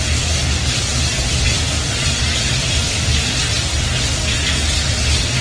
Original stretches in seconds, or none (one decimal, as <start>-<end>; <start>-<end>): 0.0-0.4; 3.5-5.4